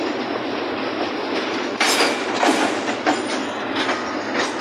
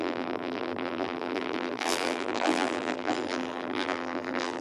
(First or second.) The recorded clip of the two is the first